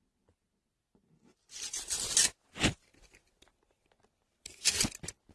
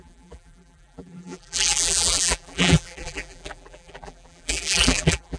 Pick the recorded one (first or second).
first